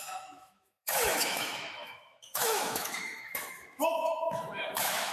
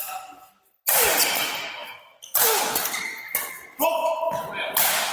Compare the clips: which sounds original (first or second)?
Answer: second